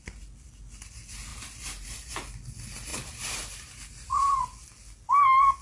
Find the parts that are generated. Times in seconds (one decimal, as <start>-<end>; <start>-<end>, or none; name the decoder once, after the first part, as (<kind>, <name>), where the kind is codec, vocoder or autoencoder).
1.3-2.1 (vocoder, BigVGAN v2); 2.9-4.4